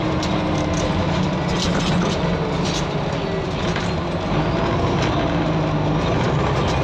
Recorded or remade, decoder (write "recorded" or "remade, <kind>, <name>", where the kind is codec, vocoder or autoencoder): recorded